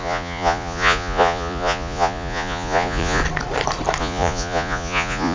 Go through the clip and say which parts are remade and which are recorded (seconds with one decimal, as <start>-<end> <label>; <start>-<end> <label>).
0.0-3.2 remade; 3.2-4.0 recorded; 4.0-5.3 remade